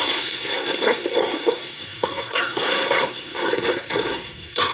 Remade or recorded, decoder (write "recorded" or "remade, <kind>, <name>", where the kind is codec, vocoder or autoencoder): remade, codec, SNAC